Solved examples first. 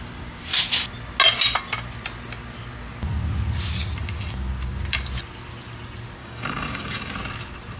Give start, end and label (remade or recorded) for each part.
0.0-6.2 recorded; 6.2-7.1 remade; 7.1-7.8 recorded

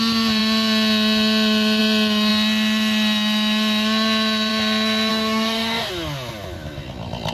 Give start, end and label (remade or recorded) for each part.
0.0-5.1 recorded; 5.1-5.9 remade; 5.9-7.3 recorded

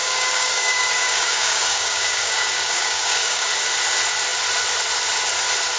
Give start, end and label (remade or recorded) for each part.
0.0-3.5 remade; 3.5-5.8 recorded

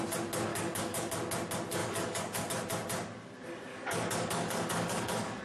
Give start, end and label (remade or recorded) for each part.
0.0-0.5 recorded; 0.5-1.1 remade; 1.1-1.8 recorded; 1.8-2.5 remade; 2.5-3.7 recorded; 3.7-5.4 remade